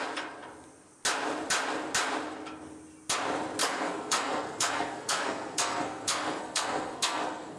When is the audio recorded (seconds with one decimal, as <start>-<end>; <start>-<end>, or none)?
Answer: 0.0-3.6